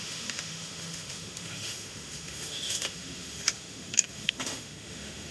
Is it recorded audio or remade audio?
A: remade